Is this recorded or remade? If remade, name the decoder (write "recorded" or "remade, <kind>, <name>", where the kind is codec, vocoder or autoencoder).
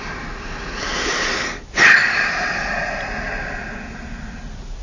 recorded